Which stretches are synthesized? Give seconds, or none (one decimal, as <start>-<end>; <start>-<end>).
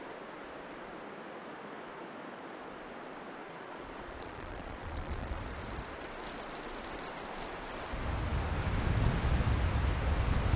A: 3.4-5.4